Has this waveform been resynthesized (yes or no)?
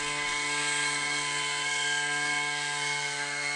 yes